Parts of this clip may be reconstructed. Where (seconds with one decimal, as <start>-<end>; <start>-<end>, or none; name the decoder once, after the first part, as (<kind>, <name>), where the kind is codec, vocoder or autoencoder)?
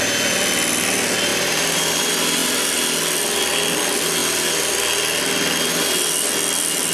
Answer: 1.3-2.0 (vocoder, BigVGAN v2)